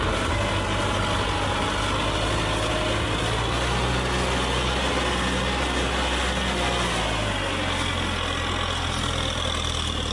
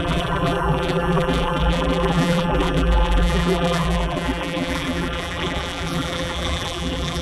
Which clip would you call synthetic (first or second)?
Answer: second